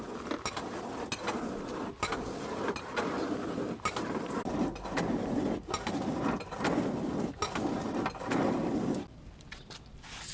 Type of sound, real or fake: real